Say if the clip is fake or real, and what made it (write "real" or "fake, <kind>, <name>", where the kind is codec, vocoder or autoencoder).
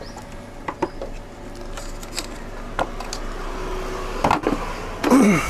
real